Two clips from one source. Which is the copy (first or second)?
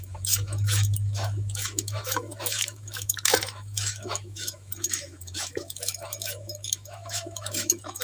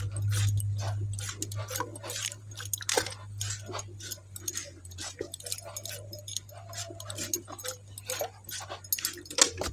first